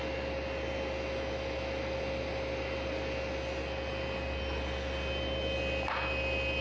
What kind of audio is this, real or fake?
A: real